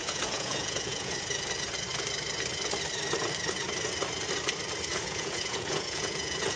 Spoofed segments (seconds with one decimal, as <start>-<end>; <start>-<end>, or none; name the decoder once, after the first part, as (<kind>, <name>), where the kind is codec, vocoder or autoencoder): 0.0-1.1 (vocoder, Vocos); 4.9-6.6